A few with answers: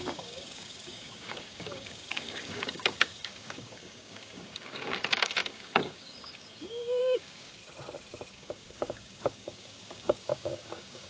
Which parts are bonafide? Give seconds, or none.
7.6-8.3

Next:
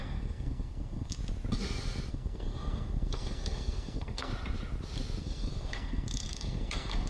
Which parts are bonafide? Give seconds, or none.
1.2-2.1; 4.3-5.2

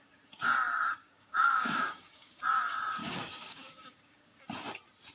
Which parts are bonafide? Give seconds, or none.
0.0-1.0; 2.4-3.0; 4.4-5.1

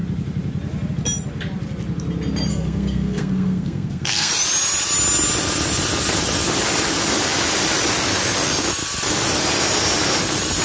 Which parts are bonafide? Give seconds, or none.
0.0-2.5; 4.3-10.6

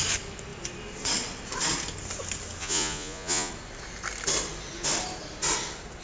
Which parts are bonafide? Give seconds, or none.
0.0-2.6; 3.5-6.0

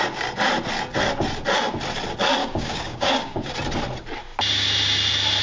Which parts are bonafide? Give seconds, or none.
0.0-2.4; 3.5-5.4

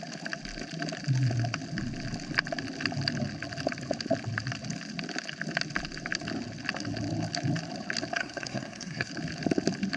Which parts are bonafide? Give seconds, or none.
0.0-8.2; 9.1-10.0